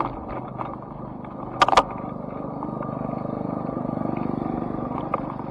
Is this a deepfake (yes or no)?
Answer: no